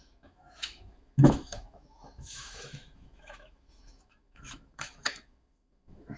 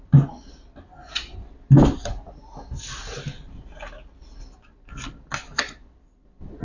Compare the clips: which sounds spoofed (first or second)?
first